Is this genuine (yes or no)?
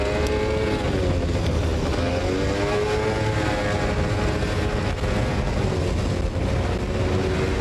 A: yes